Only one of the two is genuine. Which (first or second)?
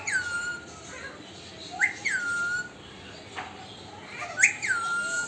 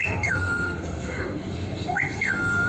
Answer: first